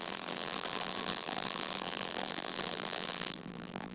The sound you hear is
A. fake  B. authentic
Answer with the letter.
A